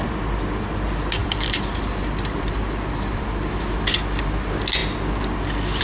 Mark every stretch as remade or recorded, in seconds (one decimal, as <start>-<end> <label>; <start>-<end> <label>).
0.0-1.2 recorded; 1.2-3.5 remade; 3.5-5.8 recorded